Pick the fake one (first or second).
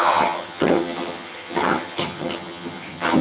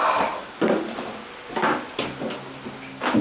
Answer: first